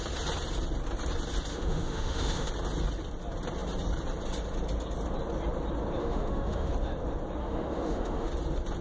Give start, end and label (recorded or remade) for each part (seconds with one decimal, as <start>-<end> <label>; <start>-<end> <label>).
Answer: 0.0-1.5 recorded; 1.5-2.5 remade; 2.5-6.0 recorded; 6.0-6.7 remade; 6.7-7.4 recorded; 7.4-8.3 remade; 8.3-8.8 recorded